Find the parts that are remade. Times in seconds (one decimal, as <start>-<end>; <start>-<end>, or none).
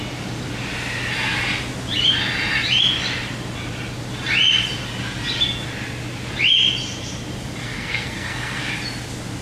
7.6-8.7